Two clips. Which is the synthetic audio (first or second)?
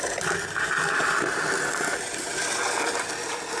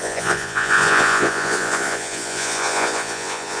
second